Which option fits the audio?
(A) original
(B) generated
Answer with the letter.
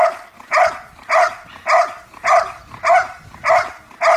A